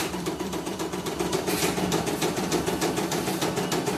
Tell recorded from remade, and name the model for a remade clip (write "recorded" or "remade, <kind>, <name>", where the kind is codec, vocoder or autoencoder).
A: remade, vocoder, BigVGAN v2